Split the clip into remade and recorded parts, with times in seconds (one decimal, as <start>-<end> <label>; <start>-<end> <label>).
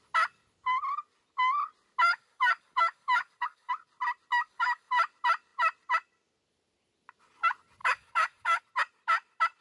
0.0-2.1 recorded; 2.1-3.7 remade; 3.7-4.3 recorded; 4.3-4.9 remade; 4.9-7.8 recorded; 7.8-8.6 remade; 8.6-9.6 recorded